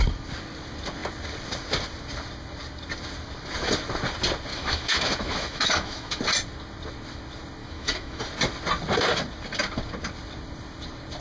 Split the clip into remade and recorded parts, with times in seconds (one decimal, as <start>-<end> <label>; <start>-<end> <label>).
0.0-4.5 recorded; 4.5-6.2 remade; 6.2-7.6 recorded; 7.6-8.2 remade; 8.2-11.2 recorded